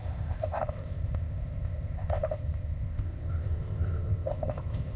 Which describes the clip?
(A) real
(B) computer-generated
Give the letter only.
B